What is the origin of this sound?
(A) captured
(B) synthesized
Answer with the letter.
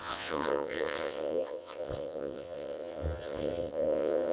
B